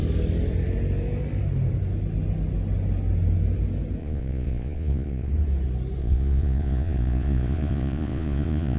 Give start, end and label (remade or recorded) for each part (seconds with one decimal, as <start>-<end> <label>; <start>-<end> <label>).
0.0-4.0 recorded; 4.0-5.3 remade; 5.3-6.0 recorded; 6.0-8.8 remade